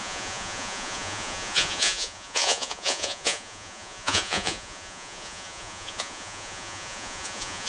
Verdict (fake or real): fake